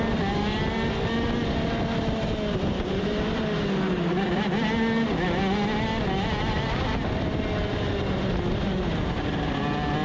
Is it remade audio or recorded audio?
recorded